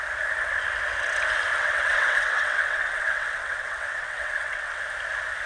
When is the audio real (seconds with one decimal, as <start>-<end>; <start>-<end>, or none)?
0.0-1.5; 4.8-5.5